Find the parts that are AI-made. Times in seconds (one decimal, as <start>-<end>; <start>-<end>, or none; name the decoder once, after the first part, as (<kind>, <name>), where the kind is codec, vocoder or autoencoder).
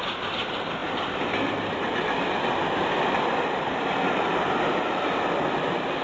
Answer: none